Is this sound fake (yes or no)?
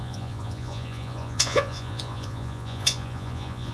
yes